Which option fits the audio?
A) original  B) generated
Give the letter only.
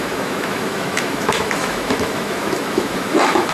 B